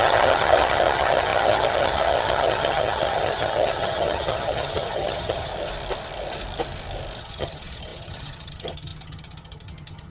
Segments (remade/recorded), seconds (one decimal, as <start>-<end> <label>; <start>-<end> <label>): 0.0-5.5 remade; 5.5-7.2 recorded; 7.2-10.1 remade